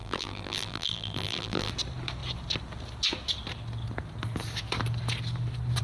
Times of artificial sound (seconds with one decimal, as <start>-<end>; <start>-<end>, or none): 0.0-1.7